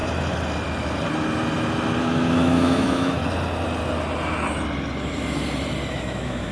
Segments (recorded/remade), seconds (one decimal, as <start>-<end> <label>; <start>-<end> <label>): 0.0-2.0 recorded; 2.0-3.2 remade; 3.2-5.9 recorded; 5.9-6.5 remade